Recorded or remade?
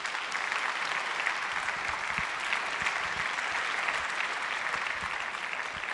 recorded